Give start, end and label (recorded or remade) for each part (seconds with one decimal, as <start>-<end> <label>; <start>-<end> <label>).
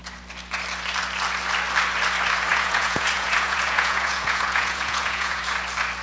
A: 0.0-2.5 recorded; 2.5-5.4 remade; 5.4-6.0 recorded